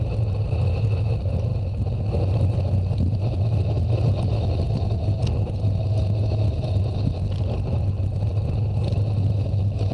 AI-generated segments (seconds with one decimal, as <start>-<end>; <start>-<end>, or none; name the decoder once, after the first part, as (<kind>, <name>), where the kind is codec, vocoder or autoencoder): none